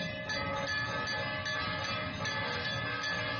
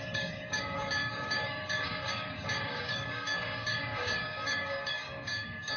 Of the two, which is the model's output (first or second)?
second